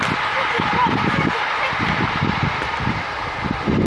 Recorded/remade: remade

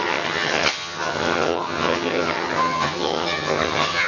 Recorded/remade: remade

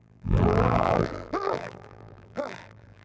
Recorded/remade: remade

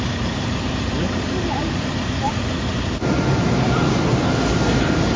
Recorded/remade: remade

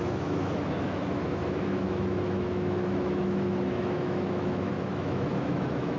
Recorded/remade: remade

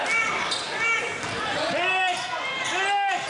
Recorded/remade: recorded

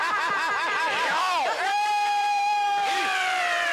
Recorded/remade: remade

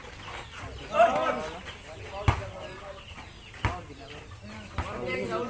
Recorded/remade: recorded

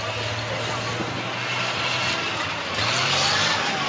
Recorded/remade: recorded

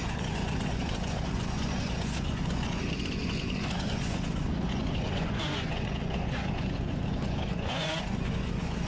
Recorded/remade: remade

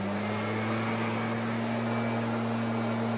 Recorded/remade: recorded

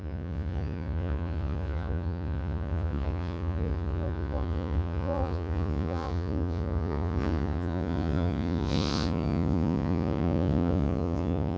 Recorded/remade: remade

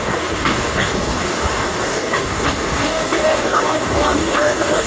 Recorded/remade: remade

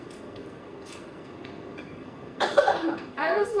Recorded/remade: remade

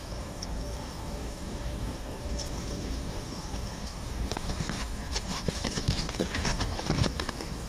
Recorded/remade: remade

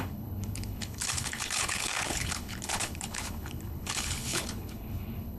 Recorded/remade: remade